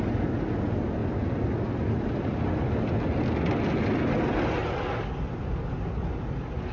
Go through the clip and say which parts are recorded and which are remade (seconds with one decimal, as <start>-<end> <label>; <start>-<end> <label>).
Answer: 0.0-6.7 recorded